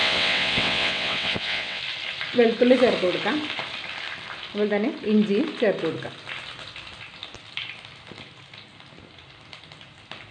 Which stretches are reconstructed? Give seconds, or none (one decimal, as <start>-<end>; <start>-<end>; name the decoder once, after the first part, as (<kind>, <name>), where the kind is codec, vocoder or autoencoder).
0.0-1.8 (vocoder, WaveNeXt)